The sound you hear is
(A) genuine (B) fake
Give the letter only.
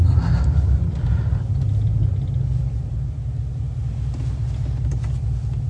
A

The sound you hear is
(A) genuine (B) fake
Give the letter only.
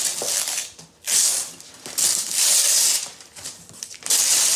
A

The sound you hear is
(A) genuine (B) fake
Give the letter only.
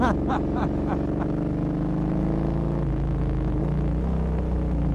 B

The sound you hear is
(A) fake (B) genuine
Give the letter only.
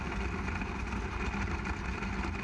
B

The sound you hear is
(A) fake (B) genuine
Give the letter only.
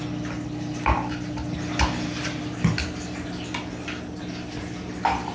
B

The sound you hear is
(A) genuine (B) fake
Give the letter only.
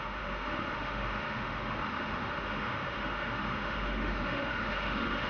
B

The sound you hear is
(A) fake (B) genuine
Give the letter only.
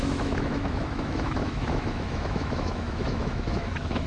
A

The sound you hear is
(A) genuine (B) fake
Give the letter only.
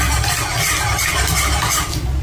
A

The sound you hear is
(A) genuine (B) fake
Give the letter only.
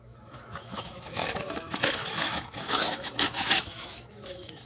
B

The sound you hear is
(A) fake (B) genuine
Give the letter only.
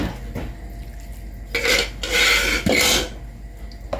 B